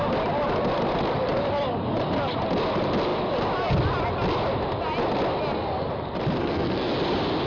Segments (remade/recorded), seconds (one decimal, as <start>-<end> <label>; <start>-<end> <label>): 0.0-6.4 recorded; 6.4-6.9 remade; 6.9-7.5 recorded